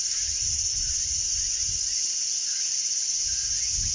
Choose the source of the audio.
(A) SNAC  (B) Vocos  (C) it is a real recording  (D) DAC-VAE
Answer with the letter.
C